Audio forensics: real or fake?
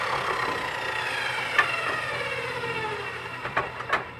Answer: real